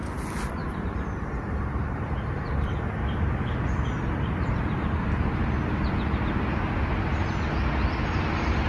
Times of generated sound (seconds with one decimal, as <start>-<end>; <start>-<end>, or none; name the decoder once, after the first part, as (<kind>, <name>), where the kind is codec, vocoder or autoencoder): 0.6-5.5 (vocoder, BigVGAN v2)